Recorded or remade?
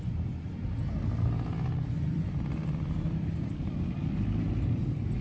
recorded